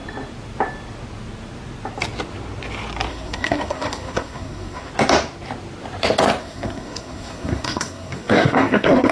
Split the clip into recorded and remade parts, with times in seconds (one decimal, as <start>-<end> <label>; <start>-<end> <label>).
0.0-3.1 recorded; 3.1-4.9 remade; 4.9-6.4 recorded; 6.4-9.1 remade